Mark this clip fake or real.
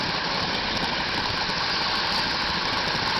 real